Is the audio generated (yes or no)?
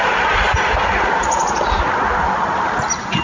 no